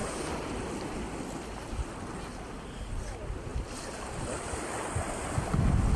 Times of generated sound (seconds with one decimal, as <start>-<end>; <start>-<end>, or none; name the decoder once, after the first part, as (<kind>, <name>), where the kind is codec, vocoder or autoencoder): none

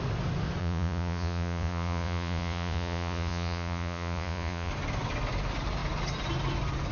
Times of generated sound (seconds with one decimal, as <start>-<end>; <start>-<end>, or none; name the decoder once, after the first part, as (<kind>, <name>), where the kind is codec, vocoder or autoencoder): 0.6-4.7 (vocoder, Vocos)

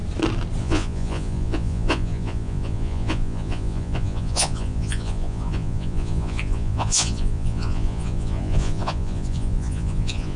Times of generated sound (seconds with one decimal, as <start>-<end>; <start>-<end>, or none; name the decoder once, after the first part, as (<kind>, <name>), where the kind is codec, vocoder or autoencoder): 0.6-10.4 (vocoder, Vocos)

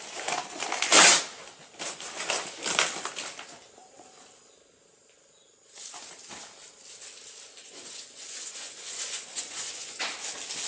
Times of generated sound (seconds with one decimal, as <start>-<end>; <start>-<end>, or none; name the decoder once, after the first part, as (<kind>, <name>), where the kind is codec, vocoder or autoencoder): 7.6-10.1 (vocoder, Vocos)

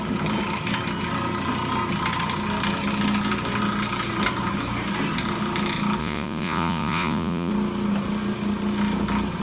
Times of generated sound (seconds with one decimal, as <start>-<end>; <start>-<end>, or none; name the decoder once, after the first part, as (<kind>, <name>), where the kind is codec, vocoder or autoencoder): 6.0-7.5 (vocoder, Vocos)

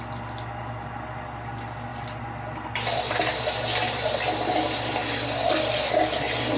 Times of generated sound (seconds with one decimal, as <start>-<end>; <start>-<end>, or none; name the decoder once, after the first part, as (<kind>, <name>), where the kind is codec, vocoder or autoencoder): none

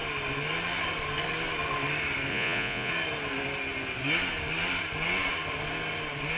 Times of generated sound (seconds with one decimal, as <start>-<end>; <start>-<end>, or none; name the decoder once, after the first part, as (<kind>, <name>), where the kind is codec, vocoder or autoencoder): 2.3-2.9 (vocoder, Vocos)

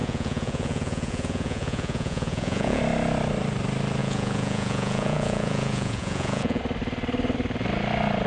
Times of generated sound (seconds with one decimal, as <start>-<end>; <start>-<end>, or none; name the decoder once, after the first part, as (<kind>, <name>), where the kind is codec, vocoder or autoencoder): 0.0-2.8 (vocoder, Vocos); 4.0-6.6